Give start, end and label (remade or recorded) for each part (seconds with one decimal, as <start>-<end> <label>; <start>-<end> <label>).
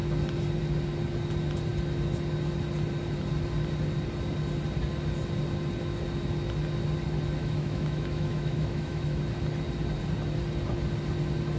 0.0-7.4 recorded; 7.4-9.2 remade; 9.2-11.6 recorded